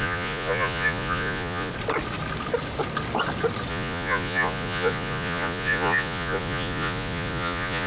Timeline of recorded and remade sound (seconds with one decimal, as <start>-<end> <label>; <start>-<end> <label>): 0.0-1.7 remade; 1.7-3.7 recorded; 3.7-7.9 remade